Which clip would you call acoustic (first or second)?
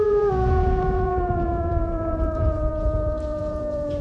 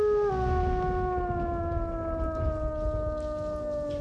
second